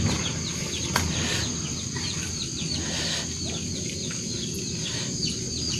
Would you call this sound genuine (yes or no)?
yes